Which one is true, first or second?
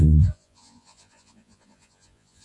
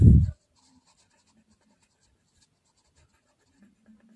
second